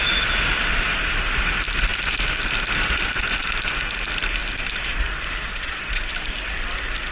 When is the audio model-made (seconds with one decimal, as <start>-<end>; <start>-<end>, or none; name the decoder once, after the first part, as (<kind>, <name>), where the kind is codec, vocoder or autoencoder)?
5.5-6.1 (vocoder, Vocos)